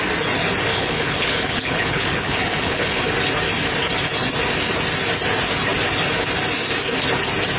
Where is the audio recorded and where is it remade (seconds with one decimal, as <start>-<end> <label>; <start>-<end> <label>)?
0.0-0.7 recorded; 0.7-3.0 remade; 3.0-7.6 recorded